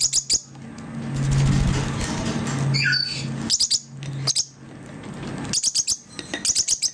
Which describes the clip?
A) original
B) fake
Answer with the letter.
A